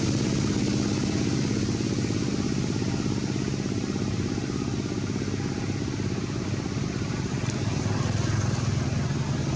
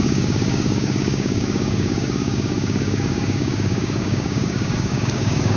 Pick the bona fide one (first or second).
first